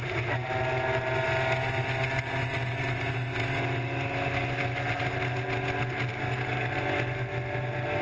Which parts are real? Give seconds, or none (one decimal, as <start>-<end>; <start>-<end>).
0.0-6.1; 6.7-8.0